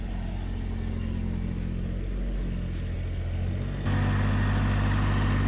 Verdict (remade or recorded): recorded